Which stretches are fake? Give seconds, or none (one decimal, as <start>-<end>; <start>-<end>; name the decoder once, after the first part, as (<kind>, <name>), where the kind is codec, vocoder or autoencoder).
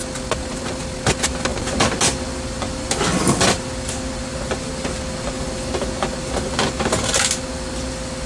none